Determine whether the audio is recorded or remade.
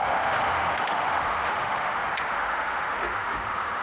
remade